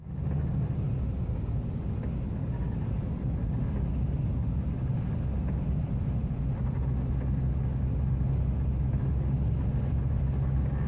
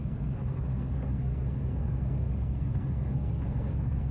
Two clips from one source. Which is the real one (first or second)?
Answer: first